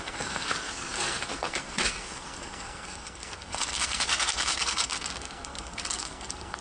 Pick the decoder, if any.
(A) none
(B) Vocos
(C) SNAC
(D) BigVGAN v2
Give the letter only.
C